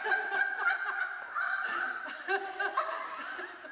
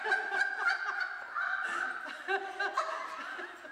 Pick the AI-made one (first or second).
first